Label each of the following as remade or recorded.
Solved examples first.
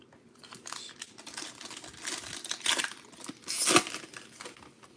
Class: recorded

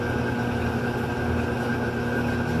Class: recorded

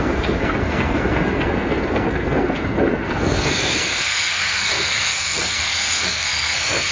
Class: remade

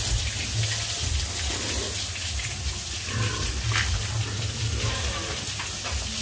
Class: recorded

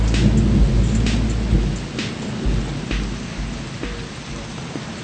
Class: recorded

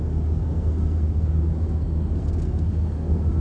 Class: remade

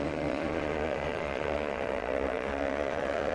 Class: remade